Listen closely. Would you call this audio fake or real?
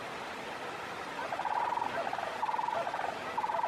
real